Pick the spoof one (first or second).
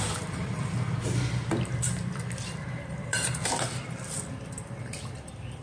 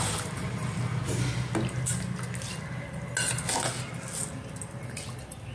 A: first